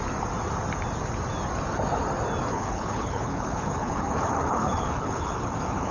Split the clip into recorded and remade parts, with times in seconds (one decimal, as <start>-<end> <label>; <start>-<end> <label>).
0.0-2.5 recorded; 2.5-5.9 remade